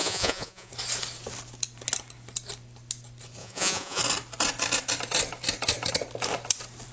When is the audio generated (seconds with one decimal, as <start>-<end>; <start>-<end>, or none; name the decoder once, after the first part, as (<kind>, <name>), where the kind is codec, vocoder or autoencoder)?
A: 0.0-0.7 (vocoder, Vocos); 3.4-4.0